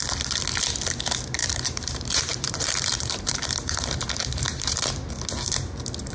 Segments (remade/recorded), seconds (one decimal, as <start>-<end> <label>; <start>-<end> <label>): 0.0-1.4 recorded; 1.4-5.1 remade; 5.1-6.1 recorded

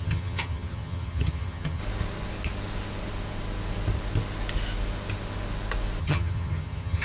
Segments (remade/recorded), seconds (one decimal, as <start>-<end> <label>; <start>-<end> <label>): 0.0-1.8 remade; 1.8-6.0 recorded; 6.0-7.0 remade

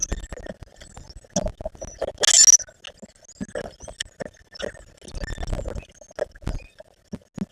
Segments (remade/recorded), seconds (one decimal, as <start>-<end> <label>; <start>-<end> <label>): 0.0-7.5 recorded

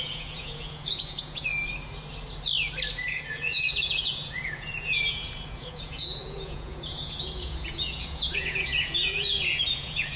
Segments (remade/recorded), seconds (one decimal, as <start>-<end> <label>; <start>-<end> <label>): 0.0-1.5 remade; 1.5-2.9 recorded; 2.9-10.2 remade

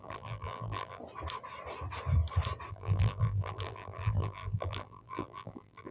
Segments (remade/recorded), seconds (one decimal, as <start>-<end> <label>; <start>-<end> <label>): 0.0-1.0 remade; 1.0-2.7 recorded; 2.7-5.9 remade

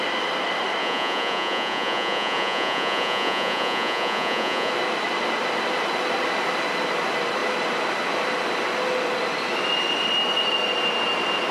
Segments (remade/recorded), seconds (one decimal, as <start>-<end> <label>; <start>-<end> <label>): 0.0-0.8 recorded; 0.8-4.7 remade; 4.7-11.5 recorded

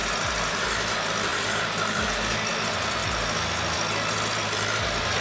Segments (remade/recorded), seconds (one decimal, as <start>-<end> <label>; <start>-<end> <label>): 0.0-5.2 recorded